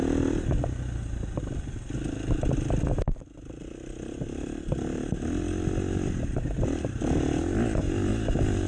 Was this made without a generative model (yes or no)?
yes